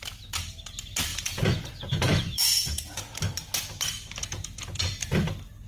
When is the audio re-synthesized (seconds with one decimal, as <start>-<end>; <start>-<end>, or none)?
1.1-3.2; 4.2-5.1